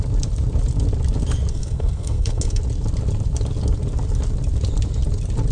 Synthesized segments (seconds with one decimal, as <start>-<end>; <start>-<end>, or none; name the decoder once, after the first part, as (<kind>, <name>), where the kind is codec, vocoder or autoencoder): 1.5-2.6 (codec, SNAC)